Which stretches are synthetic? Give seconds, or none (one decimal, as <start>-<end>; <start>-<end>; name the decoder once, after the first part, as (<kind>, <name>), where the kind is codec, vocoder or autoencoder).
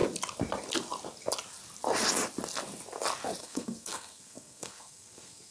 3.4-5.5 (codec, SNAC)